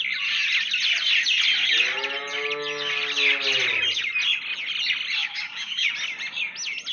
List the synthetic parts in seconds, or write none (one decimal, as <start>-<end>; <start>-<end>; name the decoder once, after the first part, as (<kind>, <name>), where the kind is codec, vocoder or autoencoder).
5.2-5.9 (codec, DAC)